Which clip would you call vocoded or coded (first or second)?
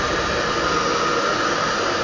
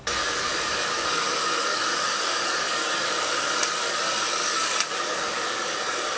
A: second